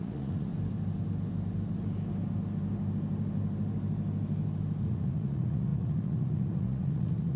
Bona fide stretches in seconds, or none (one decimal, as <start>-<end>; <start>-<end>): 0.5-4.8